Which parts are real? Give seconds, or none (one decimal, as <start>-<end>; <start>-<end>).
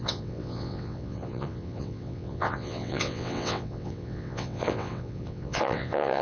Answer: none